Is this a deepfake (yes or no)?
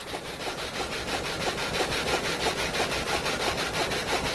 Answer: no